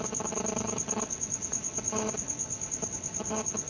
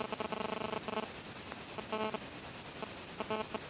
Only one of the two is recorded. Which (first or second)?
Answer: second